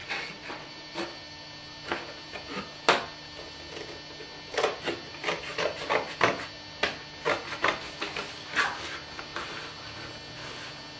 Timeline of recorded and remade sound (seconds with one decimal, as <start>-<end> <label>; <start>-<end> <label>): 0.0-0.7 remade; 0.7-11.0 recorded